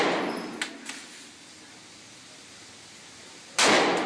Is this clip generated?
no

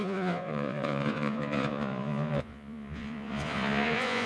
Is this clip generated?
yes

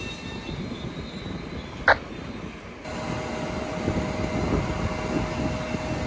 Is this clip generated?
no